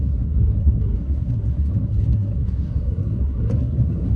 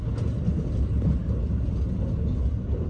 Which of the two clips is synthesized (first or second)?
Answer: first